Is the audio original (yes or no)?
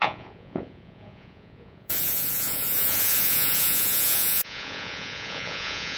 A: no